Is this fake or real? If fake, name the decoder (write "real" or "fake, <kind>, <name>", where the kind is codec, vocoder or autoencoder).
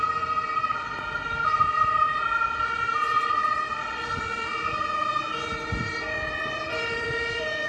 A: fake, vocoder, BigVGAN v2